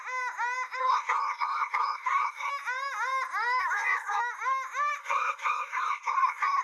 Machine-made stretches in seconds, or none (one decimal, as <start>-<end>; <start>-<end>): 0.8-2.5; 3.6-4.2; 5.0-6.6